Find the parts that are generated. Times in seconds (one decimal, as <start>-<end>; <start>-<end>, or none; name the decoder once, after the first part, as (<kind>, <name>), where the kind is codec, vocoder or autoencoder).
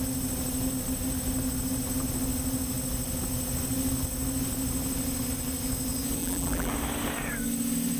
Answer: 6.2-6.7 (vocoder, BigVGAN v2)